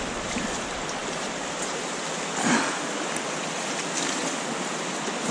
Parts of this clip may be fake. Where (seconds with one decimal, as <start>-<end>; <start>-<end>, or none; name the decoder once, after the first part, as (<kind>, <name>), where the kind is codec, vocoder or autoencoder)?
none